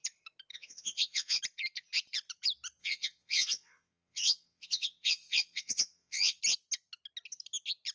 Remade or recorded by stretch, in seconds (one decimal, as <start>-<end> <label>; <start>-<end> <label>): 0.0-0.5 recorded; 0.5-1.4 remade; 1.4-2.8 recorded; 2.8-6.4 remade; 6.4-7.9 recorded